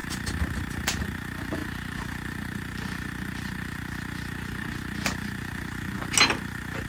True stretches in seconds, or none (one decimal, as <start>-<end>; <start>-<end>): 1.0-6.9